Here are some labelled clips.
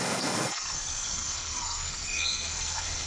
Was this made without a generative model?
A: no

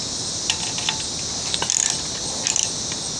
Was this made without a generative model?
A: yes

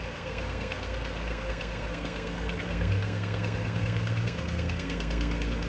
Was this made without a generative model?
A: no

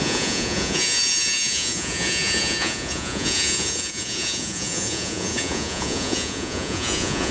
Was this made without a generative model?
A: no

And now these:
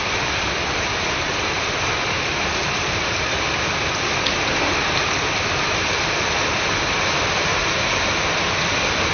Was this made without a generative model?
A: no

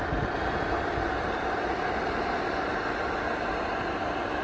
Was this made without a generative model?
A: no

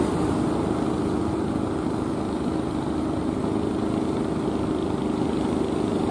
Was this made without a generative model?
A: yes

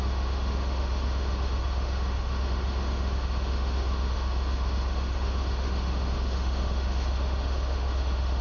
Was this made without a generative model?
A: no